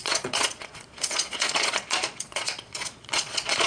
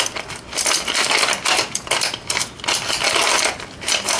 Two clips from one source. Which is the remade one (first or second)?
first